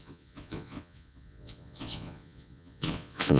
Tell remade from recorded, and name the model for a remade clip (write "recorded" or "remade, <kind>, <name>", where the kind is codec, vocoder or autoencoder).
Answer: remade, vocoder, Vocos